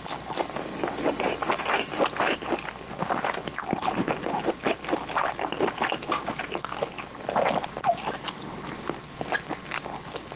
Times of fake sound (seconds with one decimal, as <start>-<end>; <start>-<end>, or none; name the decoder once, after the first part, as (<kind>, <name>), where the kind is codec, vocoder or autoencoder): none